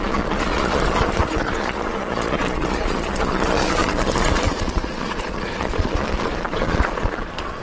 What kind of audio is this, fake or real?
fake